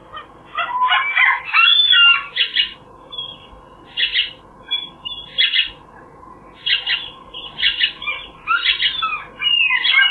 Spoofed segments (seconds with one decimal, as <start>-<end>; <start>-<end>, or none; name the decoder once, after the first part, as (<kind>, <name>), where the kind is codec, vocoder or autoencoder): none